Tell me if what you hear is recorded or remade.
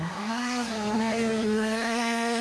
remade